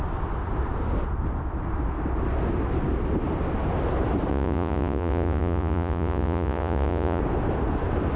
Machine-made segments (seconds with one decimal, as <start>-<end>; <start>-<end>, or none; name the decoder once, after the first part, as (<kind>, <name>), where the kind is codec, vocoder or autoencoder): 4.3-7.2 (vocoder, Vocos)